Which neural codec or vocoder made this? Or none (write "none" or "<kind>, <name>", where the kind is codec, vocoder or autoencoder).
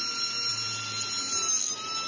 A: none